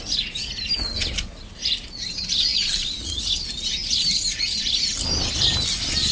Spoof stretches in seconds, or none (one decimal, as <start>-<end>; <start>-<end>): 2.5-3.3